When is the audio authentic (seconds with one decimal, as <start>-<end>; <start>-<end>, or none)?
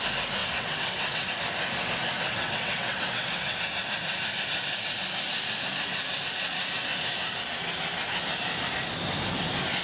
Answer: 0.0-0.4; 1.3-2.3; 3.6-9.8